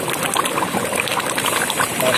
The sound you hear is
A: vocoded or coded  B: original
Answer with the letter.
B